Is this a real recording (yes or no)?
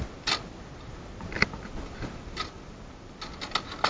yes